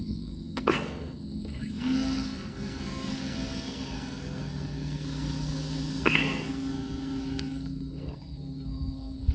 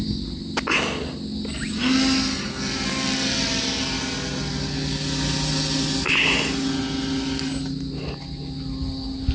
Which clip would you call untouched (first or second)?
second